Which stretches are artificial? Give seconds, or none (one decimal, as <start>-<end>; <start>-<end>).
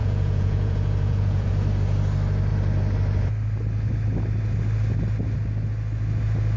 0.0-1.5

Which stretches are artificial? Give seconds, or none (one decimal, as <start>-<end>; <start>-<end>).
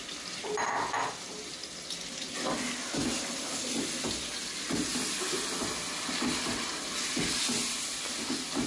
none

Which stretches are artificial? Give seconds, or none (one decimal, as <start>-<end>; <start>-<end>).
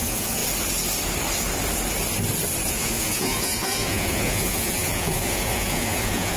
0.0-0.4; 2.7-6.4